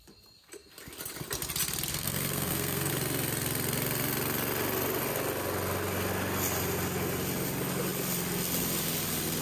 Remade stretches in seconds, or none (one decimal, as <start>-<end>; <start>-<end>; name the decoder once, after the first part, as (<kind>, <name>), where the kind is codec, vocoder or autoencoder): 1.9-2.9 (codec, SNAC)